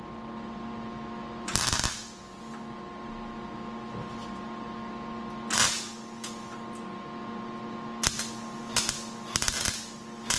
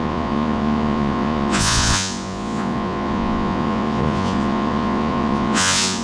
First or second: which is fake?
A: second